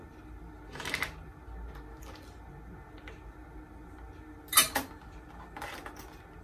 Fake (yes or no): no